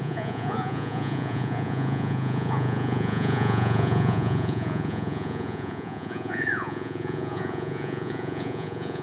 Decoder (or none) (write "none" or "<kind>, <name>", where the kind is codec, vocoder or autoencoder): vocoder, Vocos